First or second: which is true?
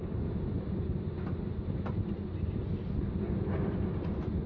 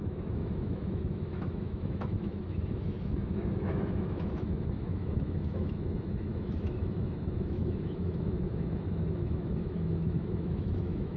first